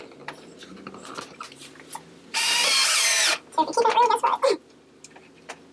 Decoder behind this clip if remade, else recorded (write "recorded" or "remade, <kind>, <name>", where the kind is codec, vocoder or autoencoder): recorded